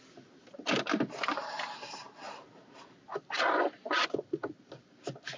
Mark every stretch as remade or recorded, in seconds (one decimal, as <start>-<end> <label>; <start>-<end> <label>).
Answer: 0.0-1.3 recorded; 1.3-4.5 remade; 4.5-5.4 recorded